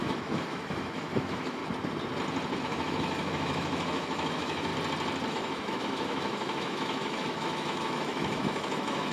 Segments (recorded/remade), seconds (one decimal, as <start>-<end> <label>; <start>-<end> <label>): 0.0-1.6 remade; 1.6-2.6 recorded; 2.6-4.7 remade; 4.7-5.3 recorded; 5.3-9.1 remade